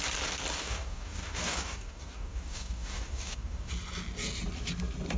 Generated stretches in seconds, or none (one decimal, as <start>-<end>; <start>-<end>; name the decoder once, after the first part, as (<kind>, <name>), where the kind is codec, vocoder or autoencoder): 0.6-3.7 (codec, DAC)